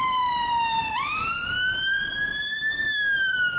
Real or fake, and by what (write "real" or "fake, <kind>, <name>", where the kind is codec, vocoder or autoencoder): fake, vocoder, BigVGAN v2